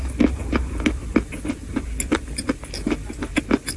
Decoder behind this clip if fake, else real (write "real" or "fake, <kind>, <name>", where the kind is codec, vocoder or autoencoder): real